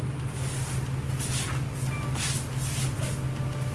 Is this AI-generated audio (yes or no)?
no